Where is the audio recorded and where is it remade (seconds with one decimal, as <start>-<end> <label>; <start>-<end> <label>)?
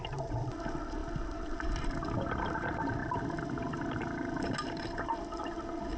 0.0-6.0 recorded